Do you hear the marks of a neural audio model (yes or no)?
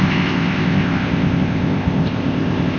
yes